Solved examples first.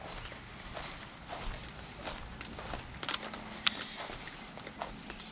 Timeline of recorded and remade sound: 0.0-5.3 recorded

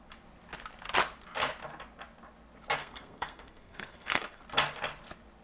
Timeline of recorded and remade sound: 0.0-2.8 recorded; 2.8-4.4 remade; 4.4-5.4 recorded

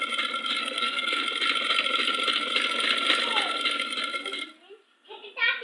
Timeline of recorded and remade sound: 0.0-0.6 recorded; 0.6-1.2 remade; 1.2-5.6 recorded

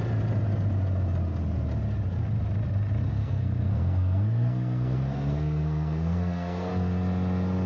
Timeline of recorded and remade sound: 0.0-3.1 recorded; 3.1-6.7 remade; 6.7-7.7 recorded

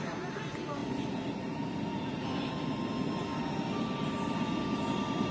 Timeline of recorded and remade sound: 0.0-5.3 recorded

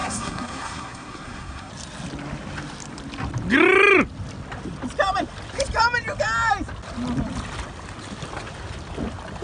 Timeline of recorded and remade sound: 0.0-1.7 remade; 1.7-9.4 recorded